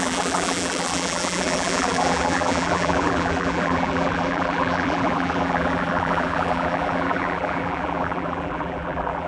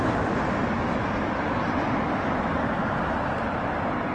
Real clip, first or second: second